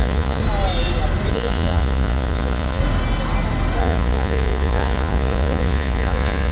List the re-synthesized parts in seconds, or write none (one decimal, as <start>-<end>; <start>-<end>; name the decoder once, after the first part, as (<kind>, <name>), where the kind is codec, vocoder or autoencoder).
0.0-0.4 (vocoder, Vocos); 1.3-2.8; 3.8-6.5